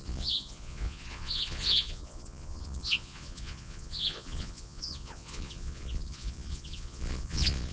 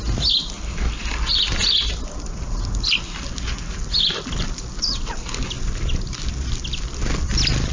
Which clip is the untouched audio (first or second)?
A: second